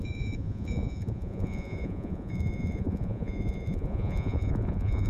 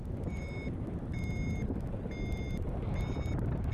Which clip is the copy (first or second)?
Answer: first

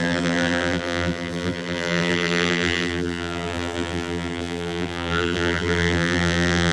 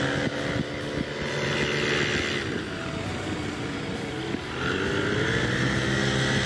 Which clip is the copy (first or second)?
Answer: first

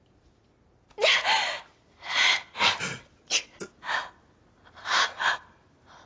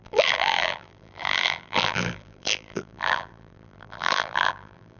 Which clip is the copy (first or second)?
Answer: second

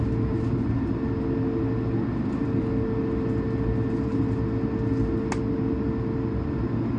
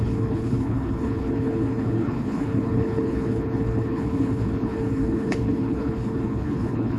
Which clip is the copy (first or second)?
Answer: second